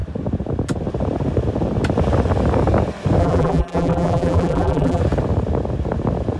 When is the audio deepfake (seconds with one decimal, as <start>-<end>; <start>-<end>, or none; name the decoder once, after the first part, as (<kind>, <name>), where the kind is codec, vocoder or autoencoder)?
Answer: 3.2-5.0 (vocoder, BigVGAN v2)